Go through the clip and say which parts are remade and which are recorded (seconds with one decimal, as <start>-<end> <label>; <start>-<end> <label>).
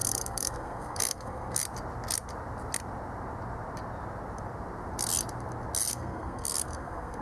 0.0-1.6 remade; 1.6-5.9 recorded; 5.9-7.2 remade